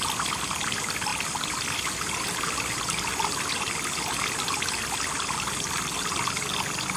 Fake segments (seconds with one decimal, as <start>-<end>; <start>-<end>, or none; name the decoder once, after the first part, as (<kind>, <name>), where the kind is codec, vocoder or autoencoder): none